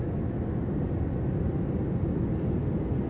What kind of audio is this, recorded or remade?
recorded